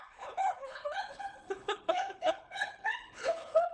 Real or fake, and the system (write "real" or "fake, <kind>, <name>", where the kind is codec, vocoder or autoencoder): fake, codec, HILCodec